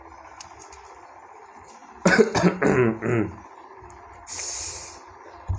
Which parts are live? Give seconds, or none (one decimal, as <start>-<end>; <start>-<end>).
0.0-5.6